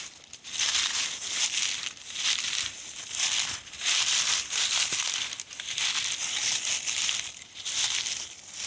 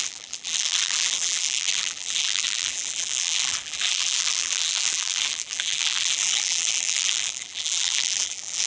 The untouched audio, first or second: first